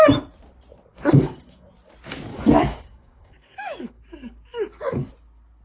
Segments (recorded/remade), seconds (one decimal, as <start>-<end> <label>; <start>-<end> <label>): 0.0-0.9 recorded; 0.9-1.7 remade; 1.7-2.3 recorded; 2.3-5.1 remade; 5.1-5.6 recorded